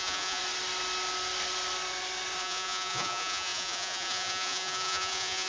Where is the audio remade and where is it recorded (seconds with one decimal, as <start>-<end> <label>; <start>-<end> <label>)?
0.0-0.4 remade; 0.4-2.4 recorded; 2.4-5.5 remade